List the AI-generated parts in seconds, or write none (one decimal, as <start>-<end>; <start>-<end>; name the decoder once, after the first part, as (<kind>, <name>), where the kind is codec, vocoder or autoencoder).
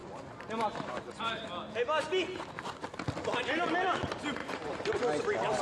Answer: 4.4-5.0 (vocoder, BigVGAN v2)